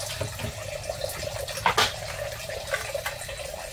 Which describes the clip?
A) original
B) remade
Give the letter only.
A